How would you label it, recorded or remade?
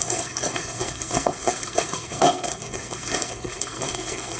remade